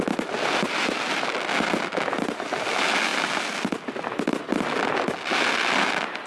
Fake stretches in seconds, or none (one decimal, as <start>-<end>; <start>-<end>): none